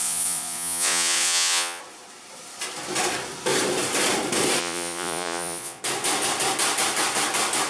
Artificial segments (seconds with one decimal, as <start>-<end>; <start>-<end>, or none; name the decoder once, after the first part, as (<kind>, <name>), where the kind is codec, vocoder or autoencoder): 0.0-1.8 (vocoder, Vocos); 4.6-5.8